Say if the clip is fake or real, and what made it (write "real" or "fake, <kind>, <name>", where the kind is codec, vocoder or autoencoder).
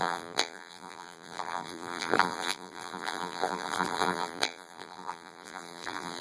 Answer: fake, vocoder, BigVGAN v2